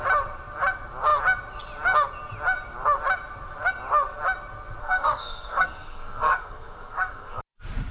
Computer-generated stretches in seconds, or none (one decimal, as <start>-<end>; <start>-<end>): 4.8-7.4